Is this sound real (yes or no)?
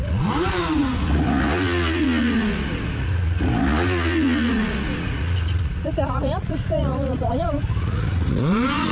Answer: no